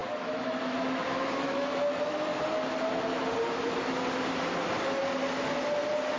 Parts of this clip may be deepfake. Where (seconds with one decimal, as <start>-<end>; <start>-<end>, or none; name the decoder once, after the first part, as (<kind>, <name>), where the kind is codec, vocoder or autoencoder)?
0.0-2.3 (autoencoder, DAC-VAE); 4.6-5.0